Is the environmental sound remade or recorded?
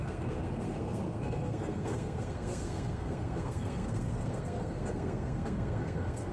remade